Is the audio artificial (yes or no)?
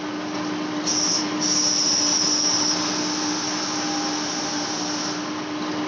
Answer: no